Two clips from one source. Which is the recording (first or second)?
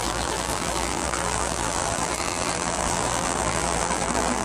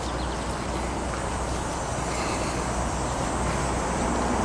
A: second